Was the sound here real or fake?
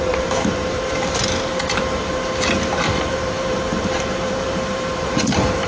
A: fake